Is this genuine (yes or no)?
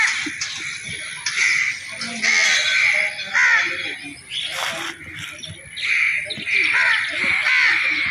no